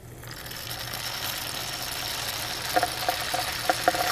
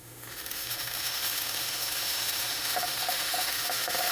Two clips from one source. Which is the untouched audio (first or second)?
first